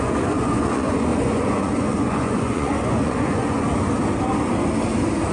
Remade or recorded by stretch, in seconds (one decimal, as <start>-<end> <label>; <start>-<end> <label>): 0.0-3.7 remade; 3.7-5.3 recorded